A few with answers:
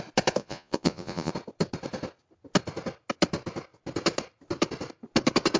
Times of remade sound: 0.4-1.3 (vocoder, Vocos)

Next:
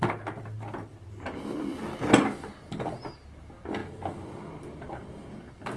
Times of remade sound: none

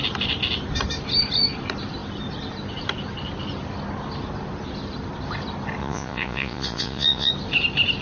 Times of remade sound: 5.8-7.3 (vocoder, Vocos)

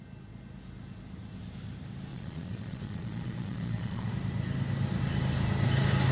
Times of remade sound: 2.1-4.1 (vocoder, Vocos)

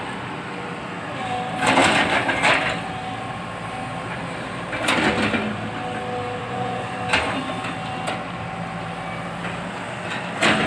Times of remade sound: 6.4-7.0 (vocoder, Vocos)